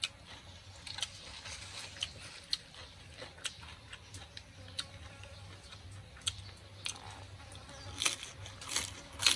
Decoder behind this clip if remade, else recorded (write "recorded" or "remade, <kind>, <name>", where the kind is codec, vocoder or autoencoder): recorded